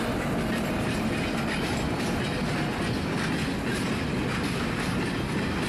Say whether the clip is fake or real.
real